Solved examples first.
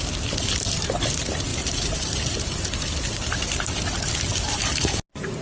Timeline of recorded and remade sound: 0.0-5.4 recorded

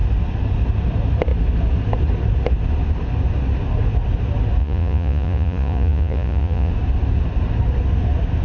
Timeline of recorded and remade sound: 0.0-4.6 recorded; 4.6-6.7 remade; 6.7-8.4 recorded